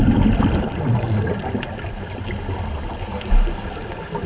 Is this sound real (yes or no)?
yes